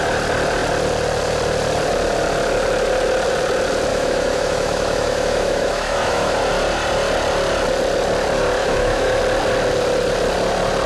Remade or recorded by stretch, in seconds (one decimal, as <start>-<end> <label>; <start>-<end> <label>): 0.0-3.9 recorded; 3.9-6.3 remade; 6.3-8.6 recorded; 8.6-9.2 remade; 9.2-10.9 recorded